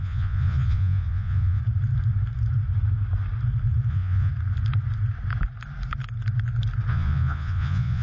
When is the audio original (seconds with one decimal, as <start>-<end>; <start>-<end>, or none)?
1.6-3.9; 4.3-6.9